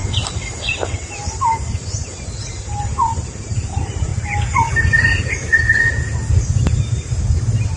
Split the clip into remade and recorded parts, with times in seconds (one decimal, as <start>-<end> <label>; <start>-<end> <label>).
0.0-0.6 recorded; 0.6-1.2 remade; 1.2-2.5 recorded; 2.5-4.1 remade; 4.1-7.8 recorded